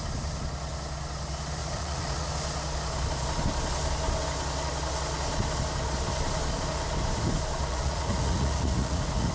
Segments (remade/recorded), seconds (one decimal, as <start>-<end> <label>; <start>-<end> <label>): 0.0-1.6 recorded; 1.6-2.3 remade; 2.3-7.7 recorded; 7.7-9.3 remade